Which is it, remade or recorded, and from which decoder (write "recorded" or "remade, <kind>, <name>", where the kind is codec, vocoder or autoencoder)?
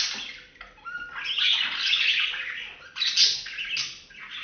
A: recorded